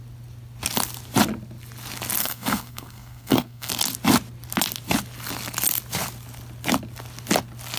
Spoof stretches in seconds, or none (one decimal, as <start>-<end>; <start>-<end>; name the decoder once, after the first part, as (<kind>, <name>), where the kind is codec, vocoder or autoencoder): 2.2-3.7 (codec, SNAC)

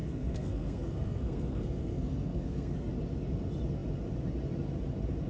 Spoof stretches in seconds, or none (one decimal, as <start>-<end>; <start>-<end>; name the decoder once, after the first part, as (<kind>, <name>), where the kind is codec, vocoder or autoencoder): 0.0-2.9 (codec, SNAC)

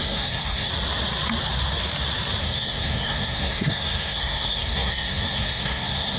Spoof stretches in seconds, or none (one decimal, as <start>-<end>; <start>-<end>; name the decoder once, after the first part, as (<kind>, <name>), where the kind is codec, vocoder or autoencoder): 0.0-0.7 (codec, SNAC); 2.4-6.2

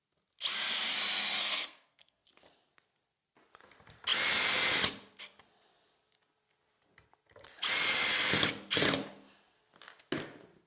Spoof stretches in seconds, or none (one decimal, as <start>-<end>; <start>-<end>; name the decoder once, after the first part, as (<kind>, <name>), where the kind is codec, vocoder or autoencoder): 1.4-2.2 (codec, SNAC)

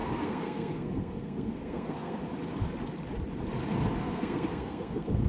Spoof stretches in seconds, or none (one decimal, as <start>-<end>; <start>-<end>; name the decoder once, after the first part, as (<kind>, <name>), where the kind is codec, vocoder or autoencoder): 0.0-2.2 (codec, SNAC); 4.0-5.3

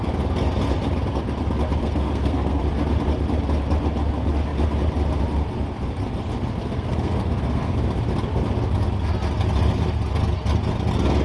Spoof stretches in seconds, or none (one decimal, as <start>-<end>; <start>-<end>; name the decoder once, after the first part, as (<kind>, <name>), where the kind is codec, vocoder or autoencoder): 1.8-2.6 (codec, SNAC); 6.6-7.8

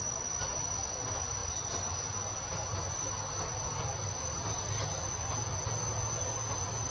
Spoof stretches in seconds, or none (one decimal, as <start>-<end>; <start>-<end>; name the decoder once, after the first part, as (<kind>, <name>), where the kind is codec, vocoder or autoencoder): none

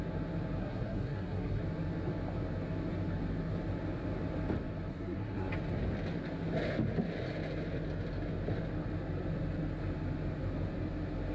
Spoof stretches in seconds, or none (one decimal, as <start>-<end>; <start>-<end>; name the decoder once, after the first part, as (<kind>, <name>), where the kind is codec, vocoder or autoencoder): 0.6-1.6 (codec, SNAC); 4.9-5.5